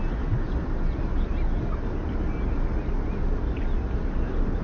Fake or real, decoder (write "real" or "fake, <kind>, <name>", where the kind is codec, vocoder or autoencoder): real